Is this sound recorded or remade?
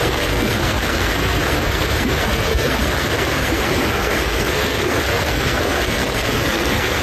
remade